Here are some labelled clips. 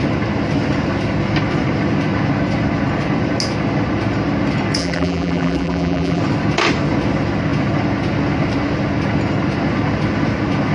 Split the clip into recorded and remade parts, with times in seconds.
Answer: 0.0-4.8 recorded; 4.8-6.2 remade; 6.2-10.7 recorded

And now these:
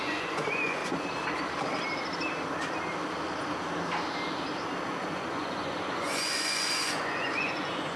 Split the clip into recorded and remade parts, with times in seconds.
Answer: 0.0-0.8 remade; 0.8-5.1 recorded; 5.1-8.0 remade

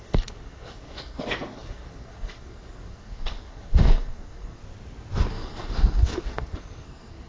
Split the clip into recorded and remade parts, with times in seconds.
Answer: 0.0-4.6 remade; 4.6-5.3 recorded; 5.3-7.3 remade

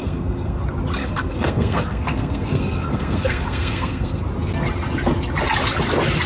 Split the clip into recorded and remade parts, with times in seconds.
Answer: 0.0-0.6 remade; 0.6-1.0 recorded; 1.0-4.2 remade; 4.2-6.3 recorded

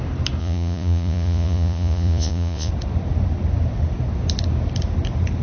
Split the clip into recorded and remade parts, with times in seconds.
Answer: 0.0-0.4 recorded; 0.4-2.7 remade; 2.7-5.4 recorded

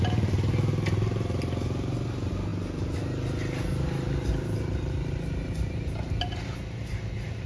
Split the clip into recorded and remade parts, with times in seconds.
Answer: 0.0-7.5 recorded